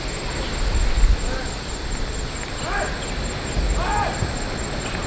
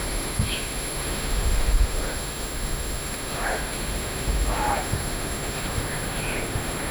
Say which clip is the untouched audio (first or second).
first